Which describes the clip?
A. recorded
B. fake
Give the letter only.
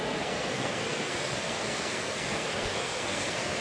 B